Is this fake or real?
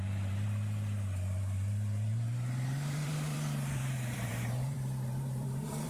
fake